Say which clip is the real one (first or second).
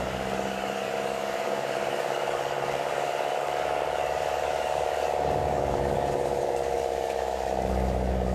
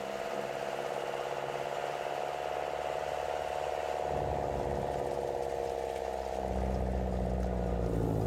second